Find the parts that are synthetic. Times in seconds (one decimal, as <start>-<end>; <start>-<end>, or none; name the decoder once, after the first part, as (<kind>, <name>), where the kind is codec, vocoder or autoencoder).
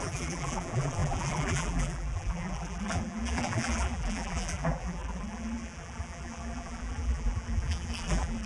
0.0-8.5 (vocoder, BigVGAN v2)